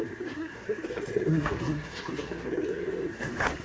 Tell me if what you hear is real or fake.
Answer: fake